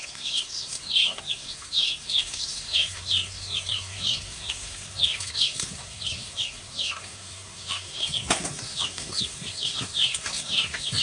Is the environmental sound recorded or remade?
remade